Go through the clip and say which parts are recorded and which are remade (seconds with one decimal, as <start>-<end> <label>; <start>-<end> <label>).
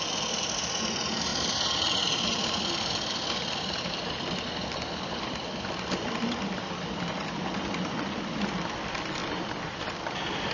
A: 0.0-9.2 remade; 9.2-9.9 recorded; 9.9-10.5 remade